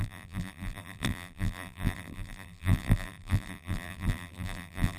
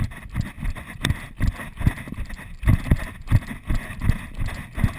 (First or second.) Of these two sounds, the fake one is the first